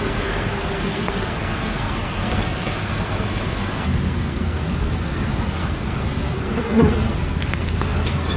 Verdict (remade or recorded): remade